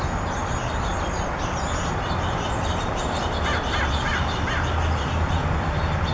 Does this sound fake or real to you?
real